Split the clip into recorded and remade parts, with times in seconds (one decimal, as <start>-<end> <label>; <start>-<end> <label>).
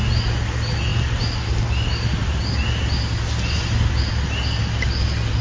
0.0-5.4 recorded